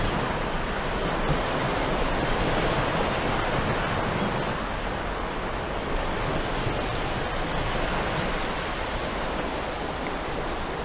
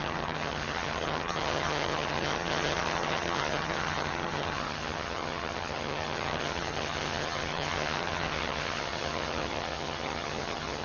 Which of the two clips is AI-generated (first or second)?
second